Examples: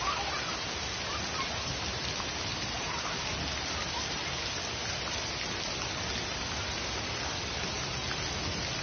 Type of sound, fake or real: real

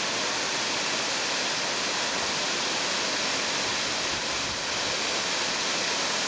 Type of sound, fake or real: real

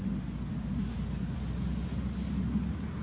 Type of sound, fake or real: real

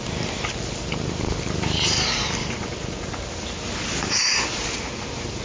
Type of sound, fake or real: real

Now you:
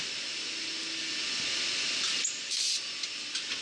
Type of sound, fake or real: real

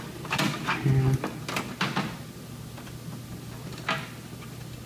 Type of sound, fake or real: real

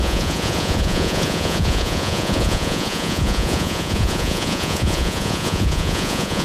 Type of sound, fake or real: fake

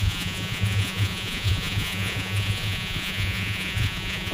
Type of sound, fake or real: fake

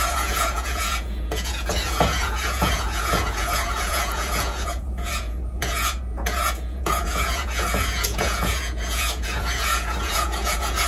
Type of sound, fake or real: fake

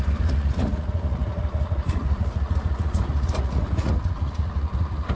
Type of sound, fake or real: fake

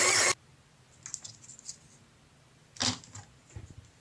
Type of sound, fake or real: real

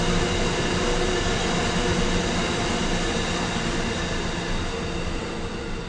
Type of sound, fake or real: real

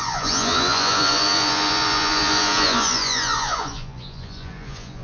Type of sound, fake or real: fake